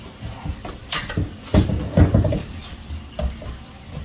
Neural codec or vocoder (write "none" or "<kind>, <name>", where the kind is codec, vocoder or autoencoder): none